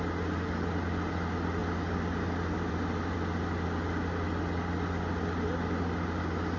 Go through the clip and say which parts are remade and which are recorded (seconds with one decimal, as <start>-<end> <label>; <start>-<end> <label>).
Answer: 0.0-6.6 recorded